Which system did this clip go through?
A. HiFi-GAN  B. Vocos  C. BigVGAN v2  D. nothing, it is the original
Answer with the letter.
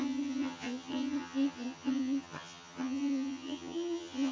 A